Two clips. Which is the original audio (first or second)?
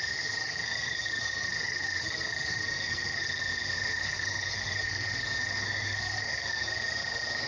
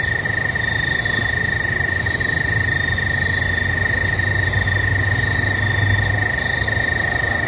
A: second